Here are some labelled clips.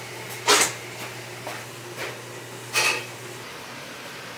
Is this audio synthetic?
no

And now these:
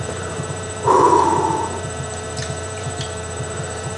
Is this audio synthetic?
yes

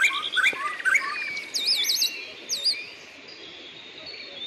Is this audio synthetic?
no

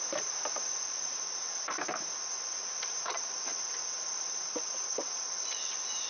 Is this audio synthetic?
yes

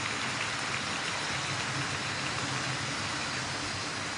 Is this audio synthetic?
no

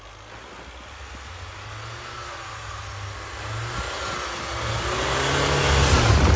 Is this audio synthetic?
no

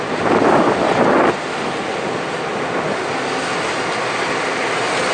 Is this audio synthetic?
no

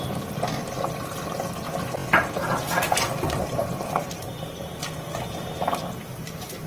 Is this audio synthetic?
no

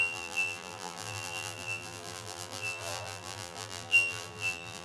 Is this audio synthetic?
yes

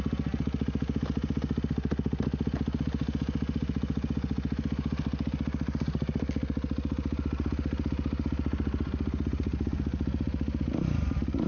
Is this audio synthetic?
no